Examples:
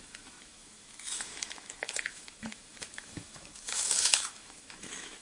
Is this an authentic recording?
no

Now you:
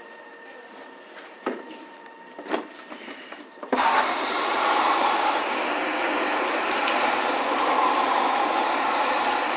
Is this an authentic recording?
no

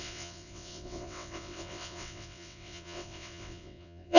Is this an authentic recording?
no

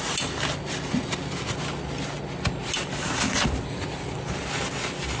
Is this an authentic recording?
yes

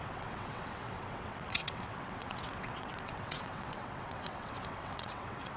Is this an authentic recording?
no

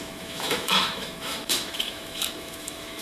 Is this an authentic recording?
no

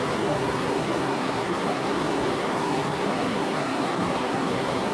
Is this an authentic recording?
no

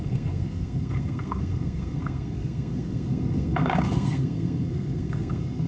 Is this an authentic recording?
no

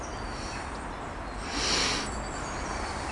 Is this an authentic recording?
yes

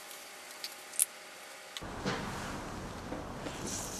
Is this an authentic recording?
yes